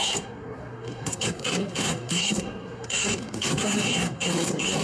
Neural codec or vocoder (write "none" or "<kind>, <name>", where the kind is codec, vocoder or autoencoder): codec, SNAC